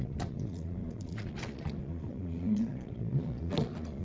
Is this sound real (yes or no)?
no